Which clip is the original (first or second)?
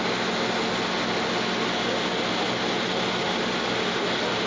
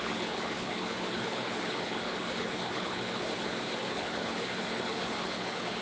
first